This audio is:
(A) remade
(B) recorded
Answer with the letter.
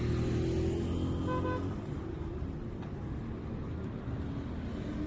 B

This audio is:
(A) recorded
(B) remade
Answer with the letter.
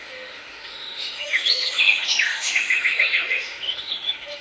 B